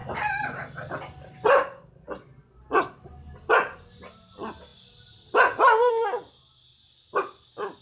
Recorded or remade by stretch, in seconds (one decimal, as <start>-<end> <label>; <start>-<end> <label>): 0.0-3.5 remade; 3.5-7.8 recorded